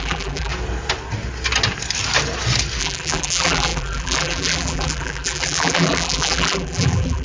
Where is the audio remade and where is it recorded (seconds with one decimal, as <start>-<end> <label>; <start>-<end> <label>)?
0.0-0.5 remade; 0.5-2.8 recorded; 2.8-7.2 remade